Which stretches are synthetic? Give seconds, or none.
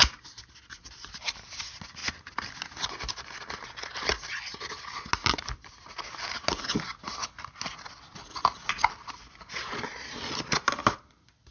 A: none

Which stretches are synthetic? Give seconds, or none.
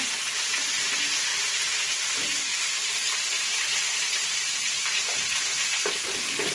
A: none